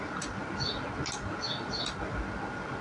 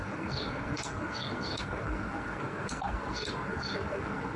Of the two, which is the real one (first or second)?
first